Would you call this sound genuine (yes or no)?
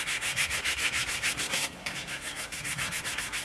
no